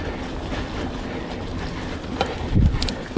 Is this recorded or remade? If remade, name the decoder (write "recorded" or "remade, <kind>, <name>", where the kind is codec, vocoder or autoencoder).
recorded